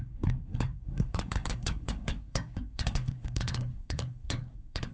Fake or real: fake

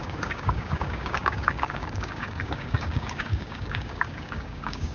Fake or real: fake